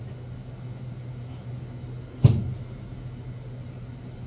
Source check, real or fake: real